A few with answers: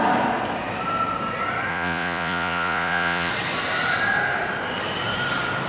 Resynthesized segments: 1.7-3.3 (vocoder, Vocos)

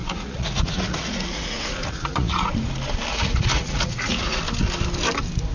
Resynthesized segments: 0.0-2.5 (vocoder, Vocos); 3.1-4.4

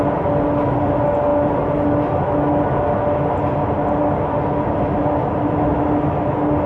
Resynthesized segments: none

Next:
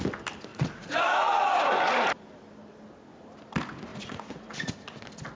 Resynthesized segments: 0.5-2.1 (vocoder, Vocos); 3.9-4.7

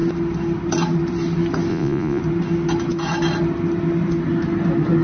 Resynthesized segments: 1.7-2.2 (vocoder, Vocos)